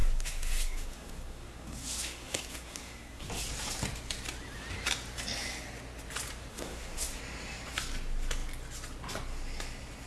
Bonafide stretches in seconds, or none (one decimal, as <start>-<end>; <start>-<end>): 3.3-6.5; 7.2-10.1